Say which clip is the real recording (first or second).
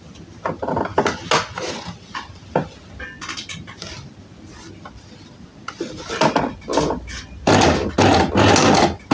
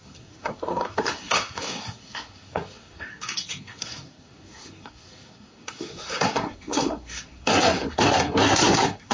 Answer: first